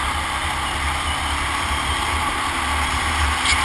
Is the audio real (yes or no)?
yes